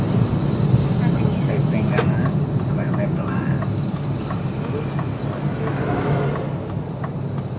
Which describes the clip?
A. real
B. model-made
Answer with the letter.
A